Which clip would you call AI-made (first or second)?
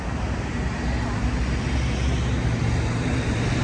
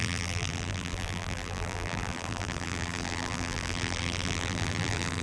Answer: second